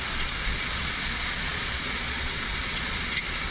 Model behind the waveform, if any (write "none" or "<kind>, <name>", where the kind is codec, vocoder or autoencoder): vocoder, Vocos